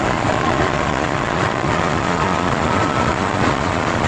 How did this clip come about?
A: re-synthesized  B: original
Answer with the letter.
A